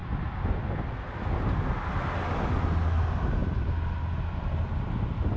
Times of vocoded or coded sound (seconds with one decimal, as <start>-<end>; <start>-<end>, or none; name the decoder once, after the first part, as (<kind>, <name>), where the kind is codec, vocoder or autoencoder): none